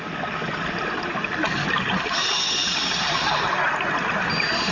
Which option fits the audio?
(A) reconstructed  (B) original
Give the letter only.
B